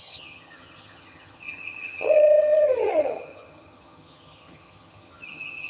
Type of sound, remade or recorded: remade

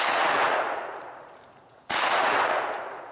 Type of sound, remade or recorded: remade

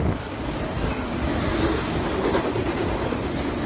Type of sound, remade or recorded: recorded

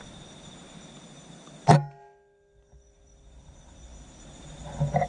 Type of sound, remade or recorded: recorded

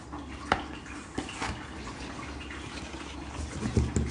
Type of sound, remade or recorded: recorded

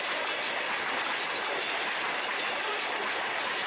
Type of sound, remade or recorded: recorded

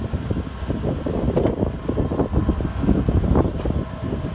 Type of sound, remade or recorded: recorded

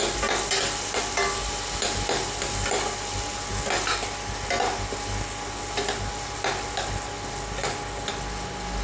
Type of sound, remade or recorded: recorded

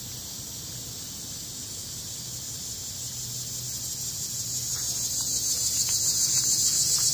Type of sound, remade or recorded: recorded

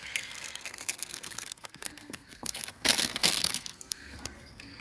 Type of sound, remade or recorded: remade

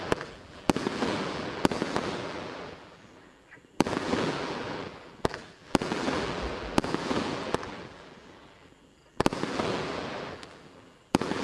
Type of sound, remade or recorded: remade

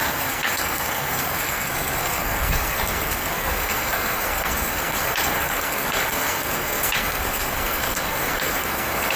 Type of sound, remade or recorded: remade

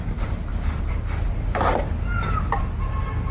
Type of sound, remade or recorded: recorded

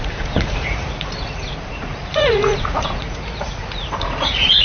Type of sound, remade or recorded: remade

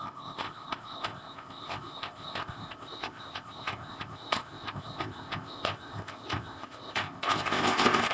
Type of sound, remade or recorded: remade